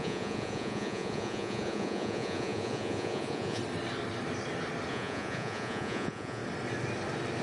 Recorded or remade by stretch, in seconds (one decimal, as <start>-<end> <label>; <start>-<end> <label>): 0.0-3.6 remade; 3.6-4.9 recorded; 4.9-6.4 remade; 6.4-7.4 recorded